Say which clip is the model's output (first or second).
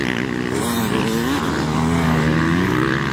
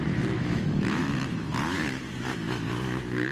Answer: second